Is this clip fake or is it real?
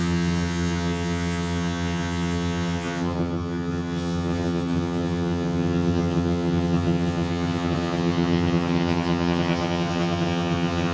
fake